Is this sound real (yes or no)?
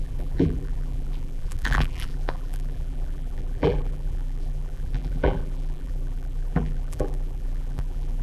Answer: no